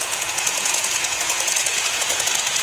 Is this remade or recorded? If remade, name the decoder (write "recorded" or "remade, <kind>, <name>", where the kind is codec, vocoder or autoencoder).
remade, vocoder, Vocos